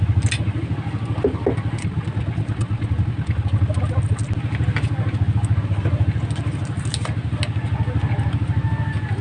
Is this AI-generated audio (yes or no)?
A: no